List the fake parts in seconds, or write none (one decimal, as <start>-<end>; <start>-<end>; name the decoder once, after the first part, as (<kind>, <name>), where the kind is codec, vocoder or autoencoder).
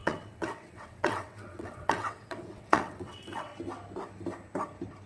0.0-3.5 (vocoder, WaveNeXt)